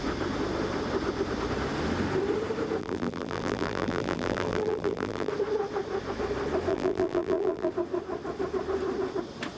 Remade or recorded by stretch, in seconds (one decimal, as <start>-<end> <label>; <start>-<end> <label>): 0.0-2.8 recorded; 2.8-5.3 remade; 5.3-6.7 recorded; 6.7-7.7 remade; 7.7-9.6 recorded

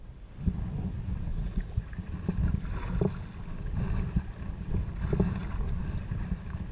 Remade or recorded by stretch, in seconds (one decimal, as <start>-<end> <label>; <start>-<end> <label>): 0.0-1.3 recorded; 1.3-1.8 remade; 1.8-6.7 recorded

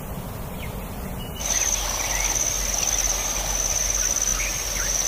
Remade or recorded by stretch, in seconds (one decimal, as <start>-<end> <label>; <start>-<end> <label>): 0.0-5.1 recorded

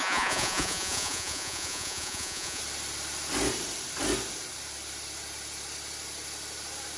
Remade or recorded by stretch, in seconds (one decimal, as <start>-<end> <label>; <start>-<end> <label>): 0.0-2.6 remade; 2.6-7.0 recorded

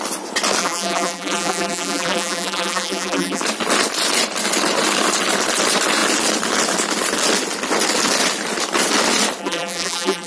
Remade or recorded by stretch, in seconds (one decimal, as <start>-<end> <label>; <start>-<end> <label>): 0.0-0.6 recorded; 0.6-3.4 remade; 3.4-9.4 recorded; 9.4-10.3 remade

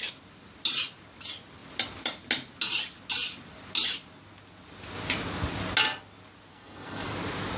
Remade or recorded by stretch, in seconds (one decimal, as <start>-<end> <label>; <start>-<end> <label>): 0.0-6.5 recorded; 6.5-7.1 remade; 7.1-7.6 recorded

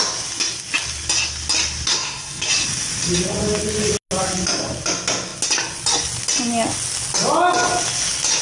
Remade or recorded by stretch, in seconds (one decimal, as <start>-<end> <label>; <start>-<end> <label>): 0.0-1.9 recorded; 1.9-2.5 remade; 2.5-8.4 recorded